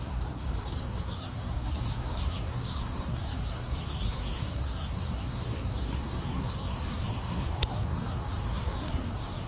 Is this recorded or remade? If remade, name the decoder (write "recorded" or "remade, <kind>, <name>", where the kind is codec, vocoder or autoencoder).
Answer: remade, codec, SNAC